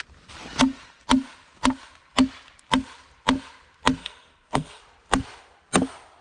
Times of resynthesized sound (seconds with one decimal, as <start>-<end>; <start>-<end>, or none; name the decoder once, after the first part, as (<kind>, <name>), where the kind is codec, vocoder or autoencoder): 4.0-4.8 (codec, SNAC)